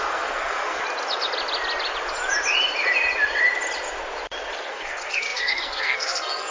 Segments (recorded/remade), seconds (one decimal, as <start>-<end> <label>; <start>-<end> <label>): 0.0-0.8 remade; 0.8-4.7 recorded; 4.7-6.5 remade